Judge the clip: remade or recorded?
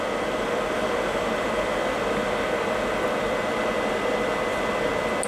recorded